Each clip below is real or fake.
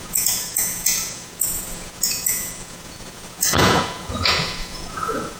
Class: fake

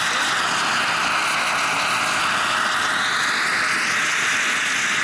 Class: real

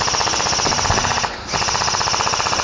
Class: real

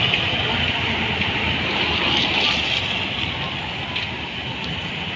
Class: real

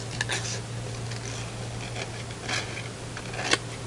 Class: real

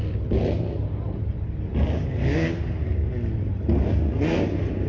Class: real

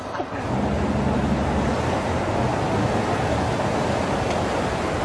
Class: real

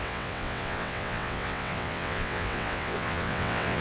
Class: fake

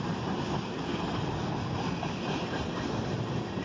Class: real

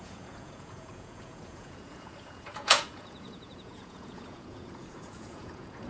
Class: fake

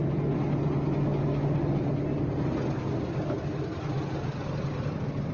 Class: real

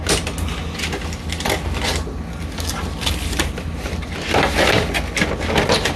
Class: real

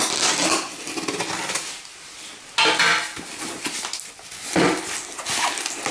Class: real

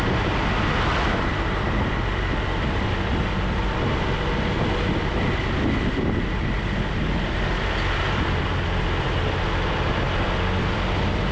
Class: real